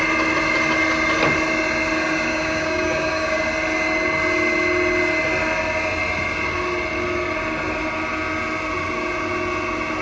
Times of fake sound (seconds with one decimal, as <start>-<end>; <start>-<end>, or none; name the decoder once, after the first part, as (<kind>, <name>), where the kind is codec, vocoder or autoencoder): 2.3-3.4 (codec, DAC)